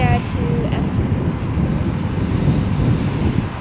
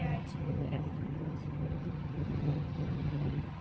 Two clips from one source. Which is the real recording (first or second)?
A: first